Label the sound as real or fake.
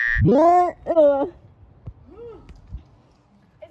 real